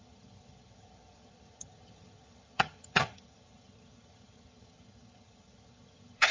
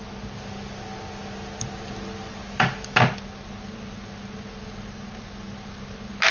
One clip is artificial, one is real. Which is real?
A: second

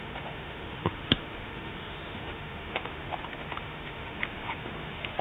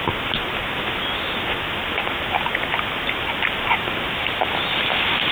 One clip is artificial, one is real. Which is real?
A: second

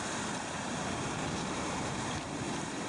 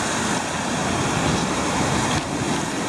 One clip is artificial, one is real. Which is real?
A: second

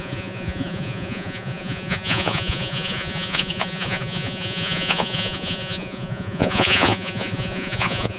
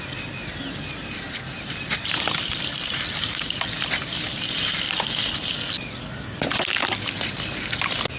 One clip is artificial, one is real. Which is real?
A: second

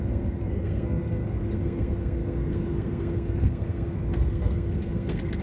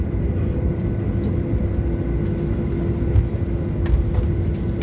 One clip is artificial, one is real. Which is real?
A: second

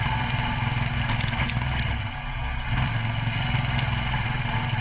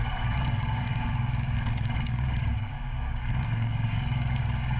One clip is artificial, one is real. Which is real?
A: first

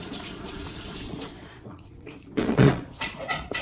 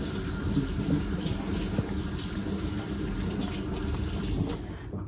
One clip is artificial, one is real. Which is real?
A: second